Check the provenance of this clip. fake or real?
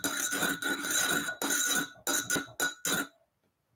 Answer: real